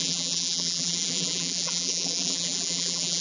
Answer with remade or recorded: remade